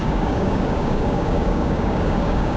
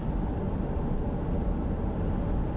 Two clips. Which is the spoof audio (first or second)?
first